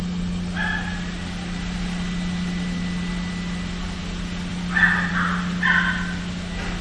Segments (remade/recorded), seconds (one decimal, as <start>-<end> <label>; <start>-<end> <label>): 0.0-6.8 recorded